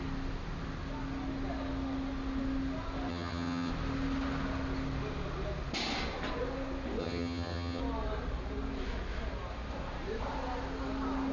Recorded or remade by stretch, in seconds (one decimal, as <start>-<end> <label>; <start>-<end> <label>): 0.0-3.1 recorded; 3.1-3.7 remade; 3.7-7.0 recorded; 7.0-7.8 remade; 7.8-11.3 recorded